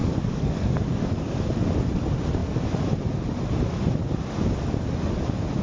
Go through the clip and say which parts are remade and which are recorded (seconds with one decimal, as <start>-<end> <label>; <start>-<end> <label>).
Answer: 0.0-1.5 remade; 1.5-5.6 recorded